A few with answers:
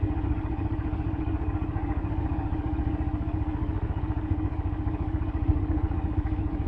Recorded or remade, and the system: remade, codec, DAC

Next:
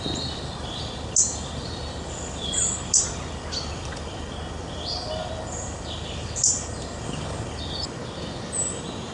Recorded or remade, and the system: remade, vocoder, BigVGAN v2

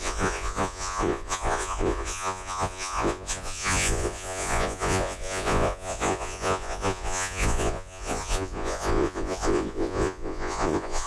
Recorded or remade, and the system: remade, vocoder, Vocos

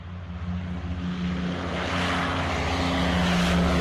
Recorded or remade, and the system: recorded